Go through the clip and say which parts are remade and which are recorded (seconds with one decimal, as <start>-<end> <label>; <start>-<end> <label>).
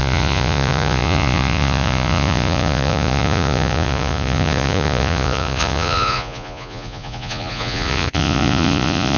0.0-9.2 remade